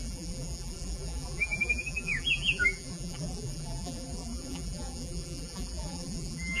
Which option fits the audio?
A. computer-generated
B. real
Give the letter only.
A